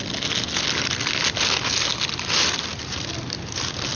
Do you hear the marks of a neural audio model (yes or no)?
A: no